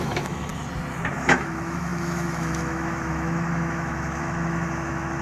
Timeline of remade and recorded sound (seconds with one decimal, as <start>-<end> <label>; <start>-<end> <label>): 0.0-0.5 remade; 0.5-1.1 recorded; 1.1-5.2 remade